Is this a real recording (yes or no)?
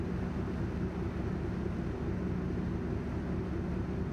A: yes